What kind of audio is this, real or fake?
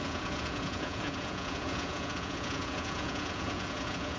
fake